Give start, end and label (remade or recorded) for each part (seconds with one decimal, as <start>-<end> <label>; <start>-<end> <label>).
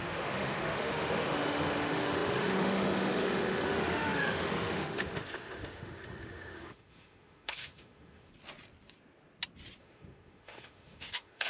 0.0-8.3 remade; 8.3-9.8 recorded; 9.8-11.5 remade